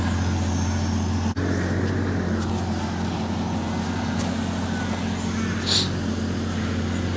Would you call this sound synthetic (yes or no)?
no